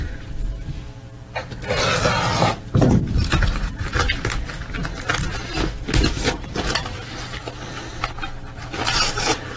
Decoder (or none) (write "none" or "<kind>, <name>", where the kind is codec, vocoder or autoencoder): none